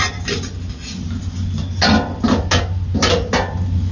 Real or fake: real